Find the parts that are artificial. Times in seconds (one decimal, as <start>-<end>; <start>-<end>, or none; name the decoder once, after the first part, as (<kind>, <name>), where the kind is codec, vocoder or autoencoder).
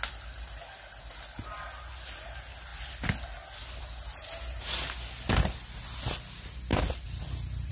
none